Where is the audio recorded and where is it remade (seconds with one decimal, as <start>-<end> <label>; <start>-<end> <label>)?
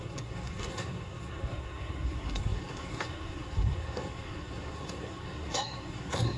0.0-6.4 remade